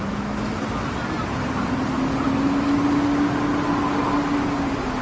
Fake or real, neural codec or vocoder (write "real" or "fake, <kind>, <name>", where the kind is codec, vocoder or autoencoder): real